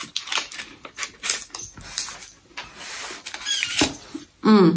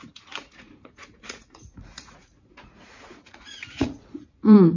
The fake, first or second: second